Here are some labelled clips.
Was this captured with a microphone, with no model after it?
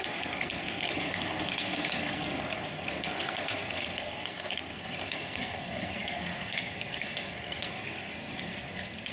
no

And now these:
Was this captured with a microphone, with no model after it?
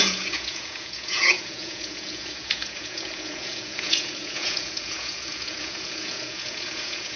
no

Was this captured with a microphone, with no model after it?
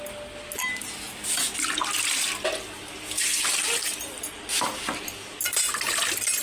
yes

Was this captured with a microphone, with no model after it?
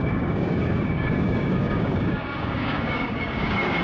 no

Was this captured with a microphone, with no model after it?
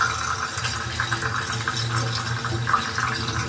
yes